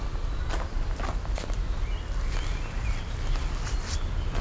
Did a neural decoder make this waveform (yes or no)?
no